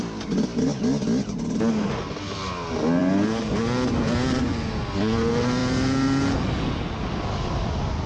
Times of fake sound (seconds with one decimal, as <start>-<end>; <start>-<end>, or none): none

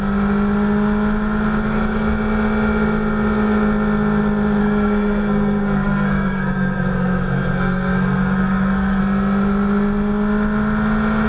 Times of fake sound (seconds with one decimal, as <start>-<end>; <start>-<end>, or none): 4.6-9.0

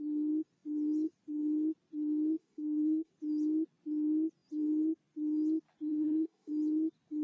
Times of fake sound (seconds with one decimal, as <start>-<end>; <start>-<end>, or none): 2.4-3.1; 5.9-6.5

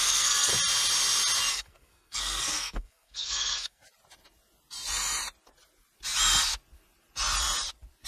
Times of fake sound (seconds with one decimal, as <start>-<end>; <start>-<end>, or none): 0.0-0.5; 1.5-3.8

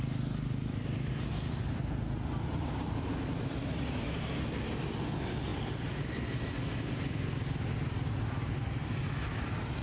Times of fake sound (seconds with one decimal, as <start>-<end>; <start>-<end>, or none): none

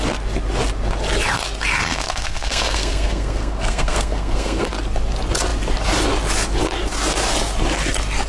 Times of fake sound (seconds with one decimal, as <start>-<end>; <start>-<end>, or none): 1.9-4.7

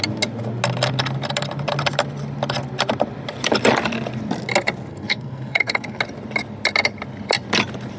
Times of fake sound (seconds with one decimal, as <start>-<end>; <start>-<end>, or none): 4.9-6.0